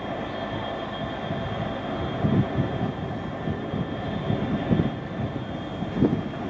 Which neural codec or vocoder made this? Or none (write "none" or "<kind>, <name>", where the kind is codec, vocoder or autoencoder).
none